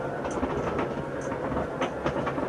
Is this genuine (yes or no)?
yes